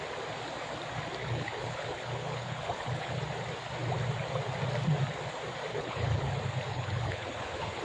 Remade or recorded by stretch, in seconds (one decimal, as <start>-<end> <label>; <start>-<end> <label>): 0.0-1.2 recorded; 1.2-3.2 remade; 3.2-5.7 recorded; 5.7-6.3 remade; 6.3-6.7 recorded; 6.7-7.8 remade